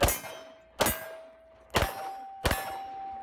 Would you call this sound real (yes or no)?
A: yes